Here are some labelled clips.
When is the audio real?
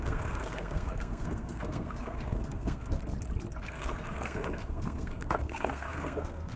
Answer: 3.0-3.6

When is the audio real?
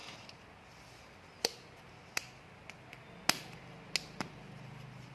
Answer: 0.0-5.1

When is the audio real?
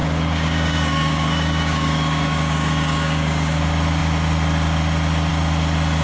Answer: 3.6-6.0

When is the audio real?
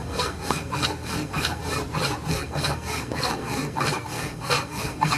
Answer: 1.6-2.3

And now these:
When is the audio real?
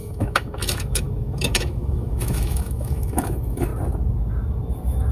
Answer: 3.7-5.1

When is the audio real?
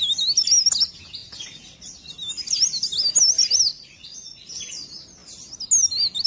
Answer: 0.0-1.2; 2.1-3.7; 4.5-6.3